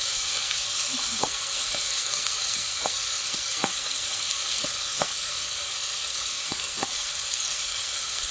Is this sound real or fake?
fake